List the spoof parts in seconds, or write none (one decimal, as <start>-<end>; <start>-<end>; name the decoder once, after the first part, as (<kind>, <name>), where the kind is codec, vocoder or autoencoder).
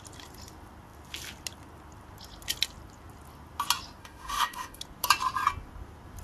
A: 4.0-4.8 (autoencoder, DAC-VAE)